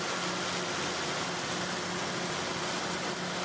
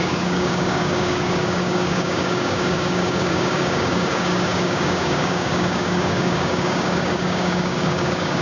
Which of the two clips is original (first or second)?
first